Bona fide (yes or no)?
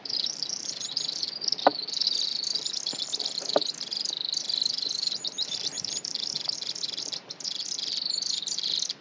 no